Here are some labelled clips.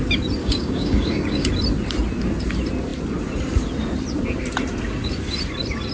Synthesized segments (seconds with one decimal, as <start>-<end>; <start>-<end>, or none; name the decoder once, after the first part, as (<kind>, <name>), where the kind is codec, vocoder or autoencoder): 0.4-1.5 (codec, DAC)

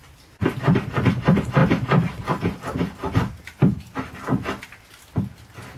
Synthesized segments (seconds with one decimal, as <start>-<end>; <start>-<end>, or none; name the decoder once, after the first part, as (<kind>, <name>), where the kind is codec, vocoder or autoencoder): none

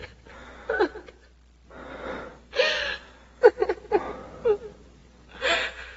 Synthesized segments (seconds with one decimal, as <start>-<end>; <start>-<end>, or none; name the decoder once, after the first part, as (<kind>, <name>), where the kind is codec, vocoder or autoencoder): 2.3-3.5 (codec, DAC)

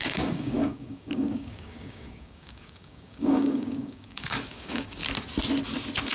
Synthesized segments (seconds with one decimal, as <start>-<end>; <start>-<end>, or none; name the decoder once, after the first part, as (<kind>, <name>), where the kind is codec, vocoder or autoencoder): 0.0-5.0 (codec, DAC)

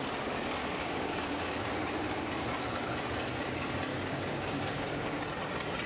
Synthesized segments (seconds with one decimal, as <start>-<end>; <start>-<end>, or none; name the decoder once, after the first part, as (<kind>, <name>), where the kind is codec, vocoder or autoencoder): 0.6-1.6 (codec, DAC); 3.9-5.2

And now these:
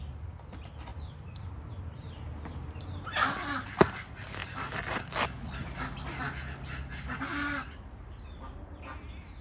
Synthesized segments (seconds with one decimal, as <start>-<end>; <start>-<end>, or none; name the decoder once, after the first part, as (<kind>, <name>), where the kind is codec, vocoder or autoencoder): none

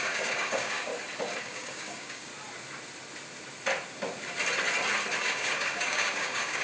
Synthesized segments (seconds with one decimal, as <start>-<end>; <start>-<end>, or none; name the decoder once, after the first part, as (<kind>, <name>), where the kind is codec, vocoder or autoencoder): 0.0-0.9 (codec, DAC); 1.4-2.3; 5.2-6.6

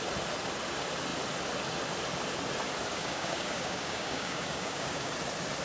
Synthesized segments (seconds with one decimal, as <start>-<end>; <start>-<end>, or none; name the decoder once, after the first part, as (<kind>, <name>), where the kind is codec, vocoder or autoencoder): 2.9-5.1 (codec, DAC)